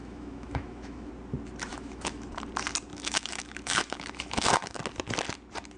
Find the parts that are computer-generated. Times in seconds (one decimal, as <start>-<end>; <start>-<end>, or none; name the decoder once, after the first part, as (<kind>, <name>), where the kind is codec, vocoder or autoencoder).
0.0-1.1 (autoencoder, DAC-VAE); 1.7-2.3; 2.9-4.8